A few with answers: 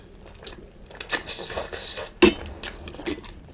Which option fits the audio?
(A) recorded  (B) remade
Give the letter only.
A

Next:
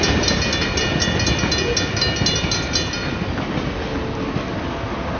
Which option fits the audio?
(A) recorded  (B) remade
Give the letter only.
A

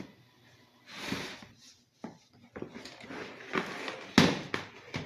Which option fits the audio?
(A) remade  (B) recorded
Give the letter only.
B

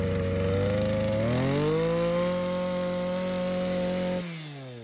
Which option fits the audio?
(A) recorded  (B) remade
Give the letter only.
A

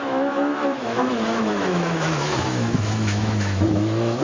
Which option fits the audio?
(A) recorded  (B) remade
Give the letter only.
B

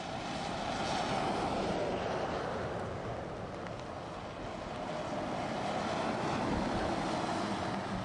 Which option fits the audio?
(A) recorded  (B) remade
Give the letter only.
A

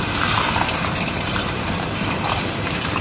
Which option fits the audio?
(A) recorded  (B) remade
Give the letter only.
B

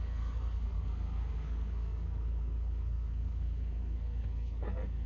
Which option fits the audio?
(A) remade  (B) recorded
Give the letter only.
A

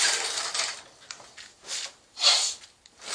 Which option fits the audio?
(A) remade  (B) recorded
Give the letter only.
B